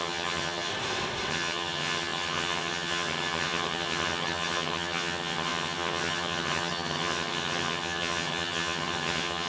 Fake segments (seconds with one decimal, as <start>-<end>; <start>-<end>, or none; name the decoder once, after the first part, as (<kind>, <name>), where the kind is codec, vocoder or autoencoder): 0.0-0.7 (vocoder, HiFi-GAN); 1.3-9.5